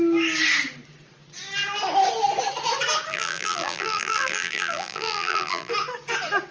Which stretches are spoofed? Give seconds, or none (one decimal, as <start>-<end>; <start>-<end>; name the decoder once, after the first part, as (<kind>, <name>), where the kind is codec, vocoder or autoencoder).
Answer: 3.1-5.7 (vocoder, BigVGAN v2)